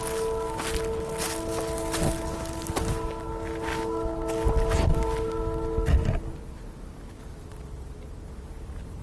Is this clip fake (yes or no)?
no